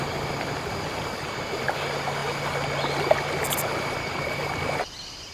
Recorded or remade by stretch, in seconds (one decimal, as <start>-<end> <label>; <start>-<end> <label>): 0.0-5.3 recorded